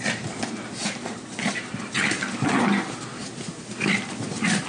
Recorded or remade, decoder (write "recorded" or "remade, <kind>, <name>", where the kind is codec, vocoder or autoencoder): recorded